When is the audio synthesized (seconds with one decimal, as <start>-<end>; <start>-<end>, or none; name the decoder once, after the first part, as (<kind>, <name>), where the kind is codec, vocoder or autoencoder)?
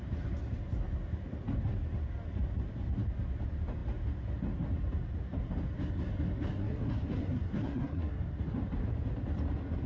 6.6-8.2 (codec, SNAC)